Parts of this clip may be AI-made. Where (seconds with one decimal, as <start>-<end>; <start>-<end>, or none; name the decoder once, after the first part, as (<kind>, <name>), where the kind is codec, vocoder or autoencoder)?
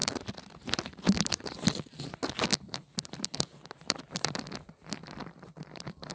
0.0-2.1 (vocoder, BigVGAN v2); 2.5-6.1